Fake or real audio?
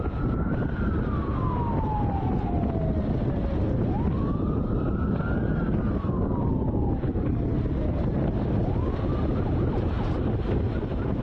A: real